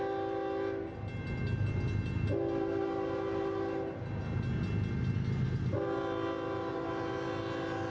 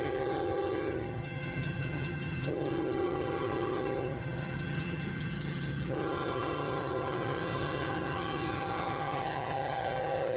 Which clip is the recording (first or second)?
first